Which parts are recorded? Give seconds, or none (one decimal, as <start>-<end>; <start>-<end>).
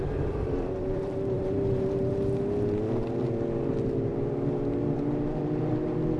2.1-6.2